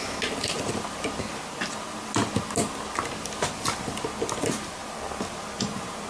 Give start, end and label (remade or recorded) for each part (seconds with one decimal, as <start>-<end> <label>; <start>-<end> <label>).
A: 0.0-6.1 recorded